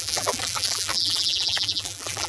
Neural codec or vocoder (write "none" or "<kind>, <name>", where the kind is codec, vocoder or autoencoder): vocoder, BigVGAN v2